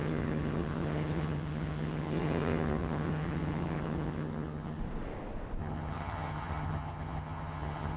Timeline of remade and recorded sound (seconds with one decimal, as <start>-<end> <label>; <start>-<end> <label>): 0.0-4.8 remade; 4.8-5.6 recorded; 5.6-8.0 remade